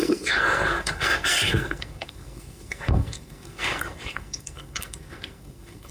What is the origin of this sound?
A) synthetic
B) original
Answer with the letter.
A